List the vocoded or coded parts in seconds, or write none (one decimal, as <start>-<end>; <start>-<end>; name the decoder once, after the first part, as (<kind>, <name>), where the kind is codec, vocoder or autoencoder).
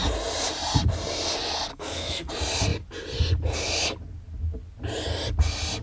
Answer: 1.7-2.3 (codec, SNAC)